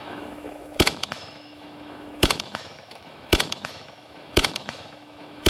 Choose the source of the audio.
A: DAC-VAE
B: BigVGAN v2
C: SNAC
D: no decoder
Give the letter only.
A